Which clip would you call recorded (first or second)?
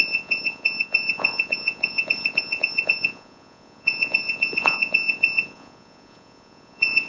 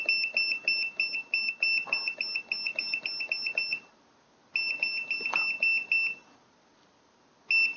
second